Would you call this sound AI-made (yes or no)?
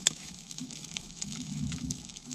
yes